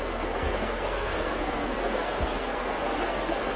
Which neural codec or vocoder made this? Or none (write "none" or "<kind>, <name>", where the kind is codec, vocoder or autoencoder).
codec, SNAC